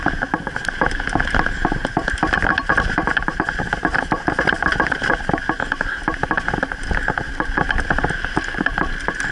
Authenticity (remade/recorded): recorded